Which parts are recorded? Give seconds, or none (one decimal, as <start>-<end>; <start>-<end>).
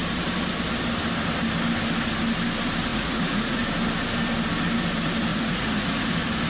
0.0-2.9; 3.6-5.3; 6.1-6.5